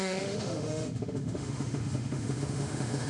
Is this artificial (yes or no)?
yes